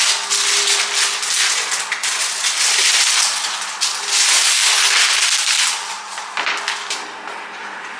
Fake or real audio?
real